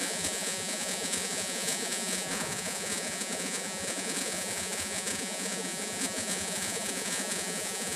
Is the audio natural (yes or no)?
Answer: no